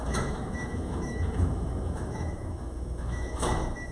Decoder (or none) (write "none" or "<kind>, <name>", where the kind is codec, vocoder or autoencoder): autoencoder, DAC-VAE